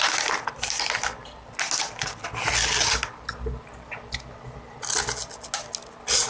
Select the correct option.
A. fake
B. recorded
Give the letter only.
B